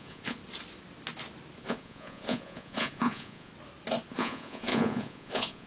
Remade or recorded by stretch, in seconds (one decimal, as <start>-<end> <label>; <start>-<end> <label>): 0.0-0.4 remade; 0.4-1.6 recorded; 1.6-3.5 remade; 3.5-4.1 recorded; 4.1-5.7 remade